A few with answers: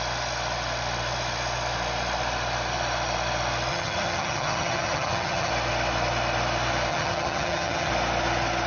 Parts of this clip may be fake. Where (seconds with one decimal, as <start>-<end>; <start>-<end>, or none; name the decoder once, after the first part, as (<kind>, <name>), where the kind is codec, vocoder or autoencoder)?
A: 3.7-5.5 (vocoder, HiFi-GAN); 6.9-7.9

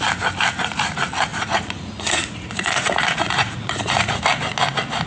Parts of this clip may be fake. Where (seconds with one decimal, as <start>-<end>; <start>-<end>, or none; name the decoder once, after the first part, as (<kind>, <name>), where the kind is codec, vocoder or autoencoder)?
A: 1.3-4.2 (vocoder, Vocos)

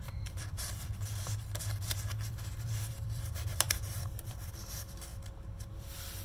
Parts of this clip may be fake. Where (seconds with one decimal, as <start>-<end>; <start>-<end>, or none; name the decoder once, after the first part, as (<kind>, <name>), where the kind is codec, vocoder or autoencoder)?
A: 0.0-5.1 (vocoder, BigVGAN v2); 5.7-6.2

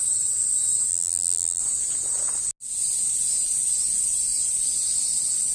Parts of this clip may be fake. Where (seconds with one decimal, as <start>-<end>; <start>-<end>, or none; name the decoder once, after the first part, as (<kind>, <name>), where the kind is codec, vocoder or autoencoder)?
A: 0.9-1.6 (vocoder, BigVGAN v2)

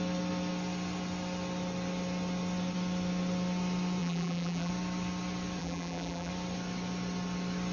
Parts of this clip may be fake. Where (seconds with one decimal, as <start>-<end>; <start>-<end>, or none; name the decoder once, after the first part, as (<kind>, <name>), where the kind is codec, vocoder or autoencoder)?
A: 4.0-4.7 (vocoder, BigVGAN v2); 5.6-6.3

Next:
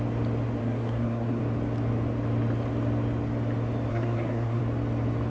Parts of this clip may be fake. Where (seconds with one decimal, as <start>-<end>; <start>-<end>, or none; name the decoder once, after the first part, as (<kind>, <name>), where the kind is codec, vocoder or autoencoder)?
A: 0.6-1.4 (codec, SNAC); 3.9-4.6